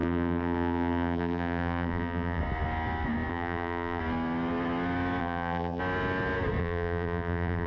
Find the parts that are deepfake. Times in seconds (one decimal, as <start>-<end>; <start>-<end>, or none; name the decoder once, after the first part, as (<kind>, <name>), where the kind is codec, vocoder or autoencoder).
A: 0.0-2.4 (vocoder, BigVGAN v2); 3.3-4.0; 5.2-5.8; 6.6-7.7